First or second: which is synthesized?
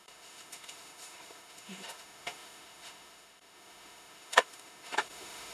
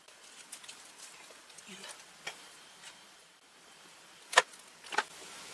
first